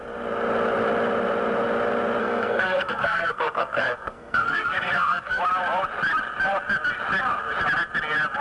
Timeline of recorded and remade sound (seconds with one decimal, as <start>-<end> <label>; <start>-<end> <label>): 0.0-2.2 recorded; 2.2-5.4 remade; 5.4-8.4 recorded